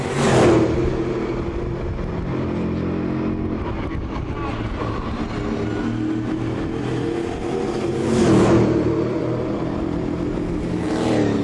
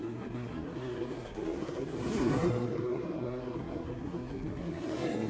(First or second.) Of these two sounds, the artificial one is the second